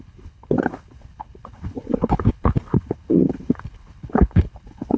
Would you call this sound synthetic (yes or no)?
yes